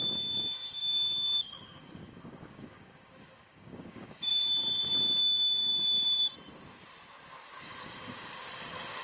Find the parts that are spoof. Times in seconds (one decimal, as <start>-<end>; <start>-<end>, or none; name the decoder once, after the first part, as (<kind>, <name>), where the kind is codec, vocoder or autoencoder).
0.0-4.3 (codec, DAC); 5.2-5.7; 7.6-9.0